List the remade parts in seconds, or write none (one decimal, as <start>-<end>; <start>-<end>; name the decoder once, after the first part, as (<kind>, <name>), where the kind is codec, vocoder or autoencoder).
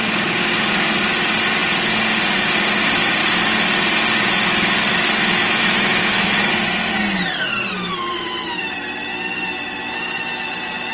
4.9-6.3 (autoencoder, DAC-VAE)